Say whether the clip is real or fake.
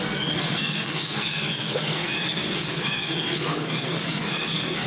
fake